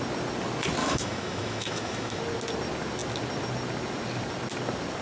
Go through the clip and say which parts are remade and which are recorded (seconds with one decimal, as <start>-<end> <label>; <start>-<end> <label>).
0.0-0.8 recorded; 0.8-2.2 remade; 2.2-5.0 recorded